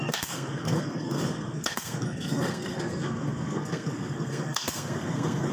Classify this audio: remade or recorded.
remade